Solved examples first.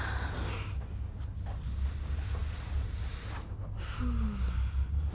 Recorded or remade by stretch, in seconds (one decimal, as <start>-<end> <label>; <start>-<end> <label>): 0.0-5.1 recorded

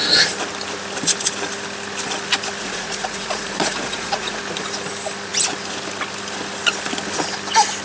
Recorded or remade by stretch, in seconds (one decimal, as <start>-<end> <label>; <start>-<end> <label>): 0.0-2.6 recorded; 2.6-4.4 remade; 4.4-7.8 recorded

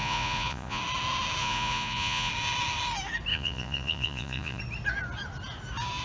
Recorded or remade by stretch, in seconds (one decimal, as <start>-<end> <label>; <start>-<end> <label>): 0.0-0.8 remade; 0.8-1.4 recorded; 1.4-2.3 remade; 2.3-3.3 recorded; 3.3-4.6 remade; 4.6-6.0 recorded

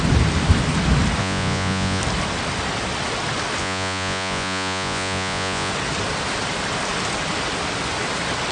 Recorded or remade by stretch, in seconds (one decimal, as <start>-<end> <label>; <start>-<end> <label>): 0.0-1.2 recorded; 1.2-2.0 remade; 2.0-3.6 recorded; 3.6-5.7 remade; 5.7-8.5 recorded

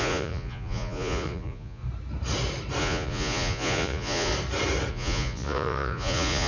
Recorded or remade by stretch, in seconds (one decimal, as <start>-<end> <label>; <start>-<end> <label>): 0.0-1.8 remade; 1.8-2.8 recorded; 2.8-4.3 remade; 4.3-4.9 recorded; 4.9-6.5 remade

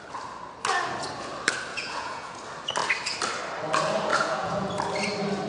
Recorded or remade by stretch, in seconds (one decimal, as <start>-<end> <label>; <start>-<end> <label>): 0.0-1.7 recorded; 1.7-2.4 remade; 2.4-4.1 recorded; 4.1-4.7 remade; 4.7-5.5 recorded

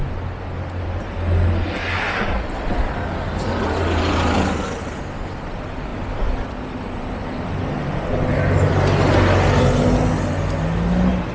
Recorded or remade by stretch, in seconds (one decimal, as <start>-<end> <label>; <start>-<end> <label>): 0.0-11.3 recorded

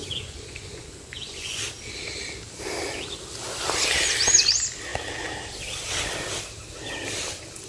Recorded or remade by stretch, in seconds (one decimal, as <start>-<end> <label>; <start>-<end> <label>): 0.0-1.6 remade; 1.6-7.7 recorded